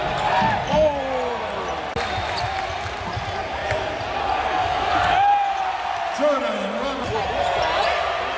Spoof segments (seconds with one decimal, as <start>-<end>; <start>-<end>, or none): none